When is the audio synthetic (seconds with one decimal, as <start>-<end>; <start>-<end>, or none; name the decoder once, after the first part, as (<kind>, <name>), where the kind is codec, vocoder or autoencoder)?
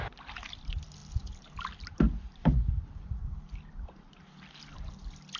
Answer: none